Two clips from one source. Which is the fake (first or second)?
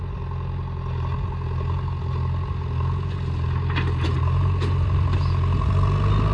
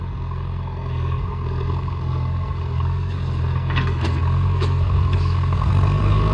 second